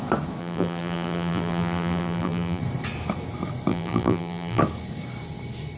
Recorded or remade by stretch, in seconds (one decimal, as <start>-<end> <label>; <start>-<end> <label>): 0.0-0.4 recorded; 0.4-2.6 remade; 2.6-3.7 recorded; 3.7-4.6 remade; 4.6-5.8 recorded